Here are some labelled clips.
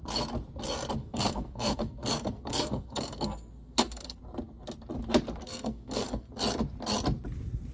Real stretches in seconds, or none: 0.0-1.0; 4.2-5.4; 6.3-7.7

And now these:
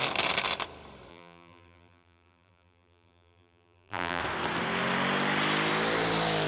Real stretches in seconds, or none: 0.0-1.1; 4.2-6.5

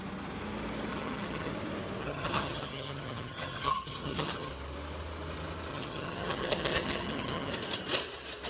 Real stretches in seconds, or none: 0.0-0.9; 1.5-2.0; 4.5-5.7; 7.5-8.5

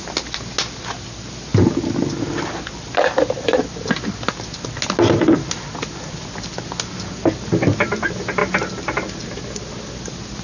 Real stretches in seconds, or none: 0.0-10.4

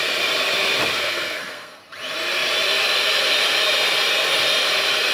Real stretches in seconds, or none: 0.0-0.9; 1.8-5.1

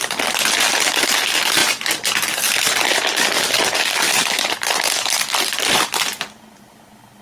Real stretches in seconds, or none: 0.0-7.2

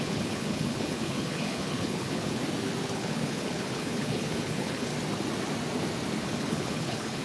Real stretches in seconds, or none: 2.4-2.9; 4.9-6.2

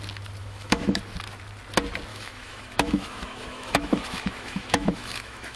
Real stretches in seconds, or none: 0.0-0.4; 1.0-2.1